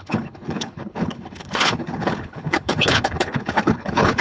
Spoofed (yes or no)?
yes